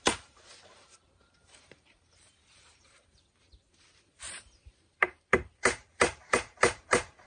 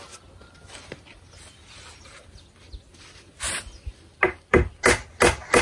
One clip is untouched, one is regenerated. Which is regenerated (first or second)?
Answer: first